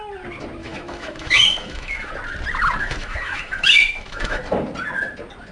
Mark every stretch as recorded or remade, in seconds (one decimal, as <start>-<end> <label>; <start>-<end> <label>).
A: 0.0-0.6 recorded; 0.6-2.1 remade; 2.1-2.8 recorded; 2.8-4.4 remade; 4.4-5.5 recorded